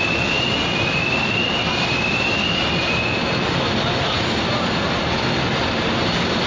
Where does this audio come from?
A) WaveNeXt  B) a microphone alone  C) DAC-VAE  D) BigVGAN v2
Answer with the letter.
B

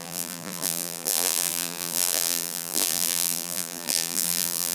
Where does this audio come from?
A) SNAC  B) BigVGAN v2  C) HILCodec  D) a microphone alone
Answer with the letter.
B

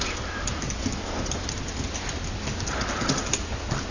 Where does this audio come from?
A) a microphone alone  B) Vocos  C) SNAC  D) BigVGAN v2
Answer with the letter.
A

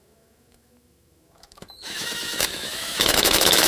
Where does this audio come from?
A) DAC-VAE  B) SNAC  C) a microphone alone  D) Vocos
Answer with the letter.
A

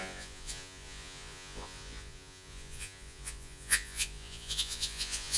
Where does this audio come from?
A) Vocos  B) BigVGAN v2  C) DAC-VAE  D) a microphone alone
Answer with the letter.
A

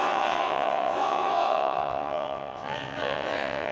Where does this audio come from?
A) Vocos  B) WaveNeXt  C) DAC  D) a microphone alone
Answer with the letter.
B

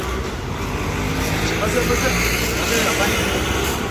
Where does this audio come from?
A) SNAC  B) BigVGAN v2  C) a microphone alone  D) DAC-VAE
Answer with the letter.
C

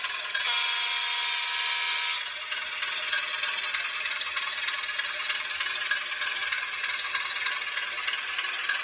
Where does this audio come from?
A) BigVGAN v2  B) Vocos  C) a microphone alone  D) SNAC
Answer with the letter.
C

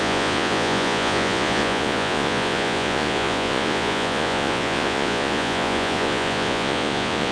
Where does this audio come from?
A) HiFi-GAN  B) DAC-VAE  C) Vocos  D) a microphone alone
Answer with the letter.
C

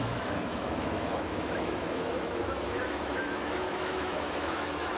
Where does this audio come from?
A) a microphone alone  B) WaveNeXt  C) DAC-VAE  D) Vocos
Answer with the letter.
C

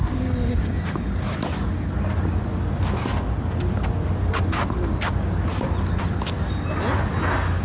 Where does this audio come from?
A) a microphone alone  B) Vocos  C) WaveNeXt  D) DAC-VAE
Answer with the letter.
A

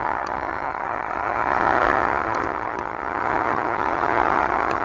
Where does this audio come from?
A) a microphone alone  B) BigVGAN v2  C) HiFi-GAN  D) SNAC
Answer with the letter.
C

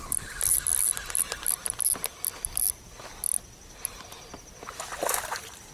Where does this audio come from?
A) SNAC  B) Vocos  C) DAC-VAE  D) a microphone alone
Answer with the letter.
D